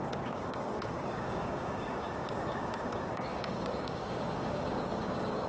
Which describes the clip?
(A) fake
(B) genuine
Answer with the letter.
A